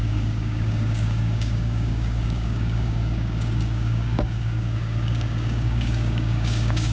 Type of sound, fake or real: fake